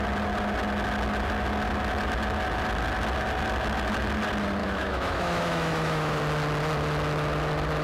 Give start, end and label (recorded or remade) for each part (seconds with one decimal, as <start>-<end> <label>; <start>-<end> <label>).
0.0-4.6 recorded; 4.6-6.2 remade; 6.2-7.8 recorded